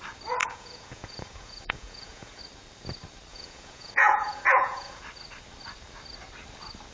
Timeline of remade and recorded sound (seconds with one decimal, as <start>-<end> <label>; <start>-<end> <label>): 0.0-0.4 recorded; 0.4-2.4 remade; 2.4-3.3 recorded; 3.3-5.0 remade; 5.0-6.9 recorded